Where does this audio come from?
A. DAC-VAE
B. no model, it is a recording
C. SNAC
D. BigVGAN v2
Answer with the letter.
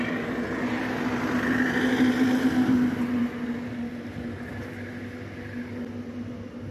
B